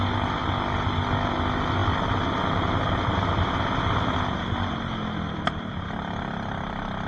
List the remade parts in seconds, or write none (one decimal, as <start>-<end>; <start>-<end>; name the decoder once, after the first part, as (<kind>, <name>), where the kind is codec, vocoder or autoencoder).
none